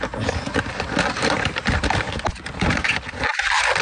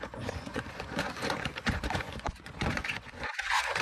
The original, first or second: first